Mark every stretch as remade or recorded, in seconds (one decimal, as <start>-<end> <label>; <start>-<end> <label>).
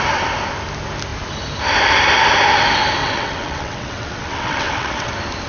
0.0-3.0 recorded; 3.0-5.1 remade; 5.1-5.5 recorded